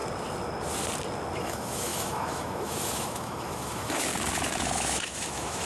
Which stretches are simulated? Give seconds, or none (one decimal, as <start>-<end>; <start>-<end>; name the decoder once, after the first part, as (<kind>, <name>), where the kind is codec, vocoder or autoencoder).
1.4-4.1 (autoencoder, DAC-VAE); 4.6-5.6